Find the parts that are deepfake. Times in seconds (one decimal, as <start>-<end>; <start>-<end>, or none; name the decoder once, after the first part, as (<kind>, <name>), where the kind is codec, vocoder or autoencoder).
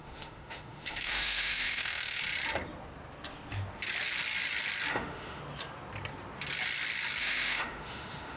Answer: 0.0-2.2 (autoencoder, DAC-VAE); 4.9-5.4; 7.2-8.4